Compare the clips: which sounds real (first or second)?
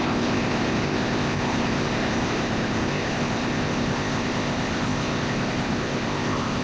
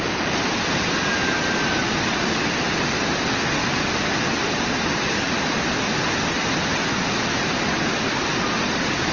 second